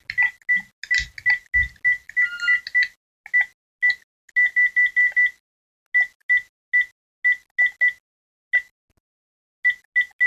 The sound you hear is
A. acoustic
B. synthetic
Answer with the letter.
A